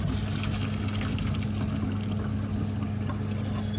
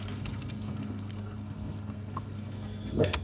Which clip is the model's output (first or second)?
second